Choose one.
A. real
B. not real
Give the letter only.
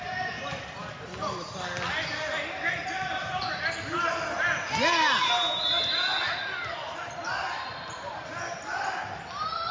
A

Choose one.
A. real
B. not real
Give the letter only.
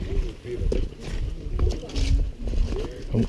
A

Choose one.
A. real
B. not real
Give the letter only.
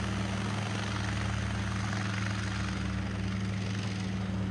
A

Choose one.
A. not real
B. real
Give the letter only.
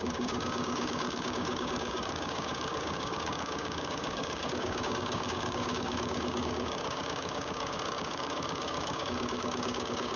A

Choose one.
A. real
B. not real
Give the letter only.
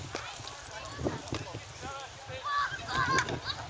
A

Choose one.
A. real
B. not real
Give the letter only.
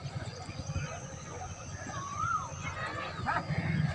B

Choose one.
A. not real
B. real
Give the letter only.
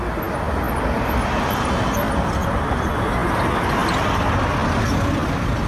B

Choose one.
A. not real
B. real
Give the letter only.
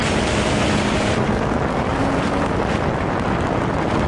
B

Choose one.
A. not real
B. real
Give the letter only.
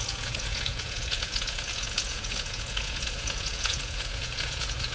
A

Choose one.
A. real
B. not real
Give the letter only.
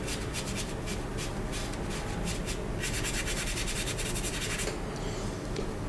A